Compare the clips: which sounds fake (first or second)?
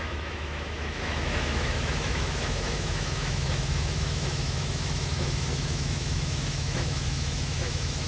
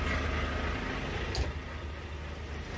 first